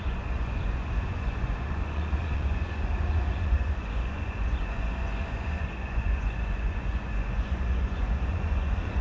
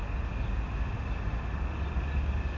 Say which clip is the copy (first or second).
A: first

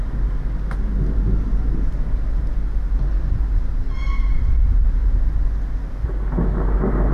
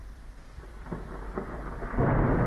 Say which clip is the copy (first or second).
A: second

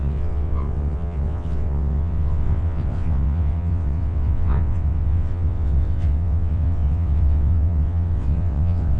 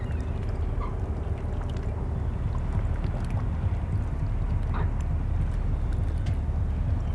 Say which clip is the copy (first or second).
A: first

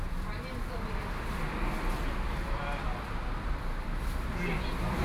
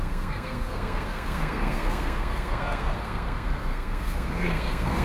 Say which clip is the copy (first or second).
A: second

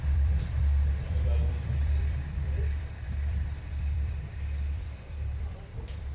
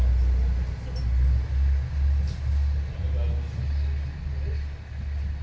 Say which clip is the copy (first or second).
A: first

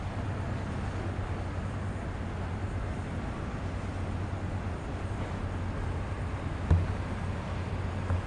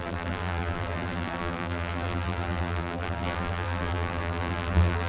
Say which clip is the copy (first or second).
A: second